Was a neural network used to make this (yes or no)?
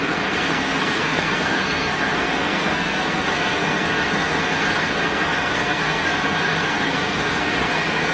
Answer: yes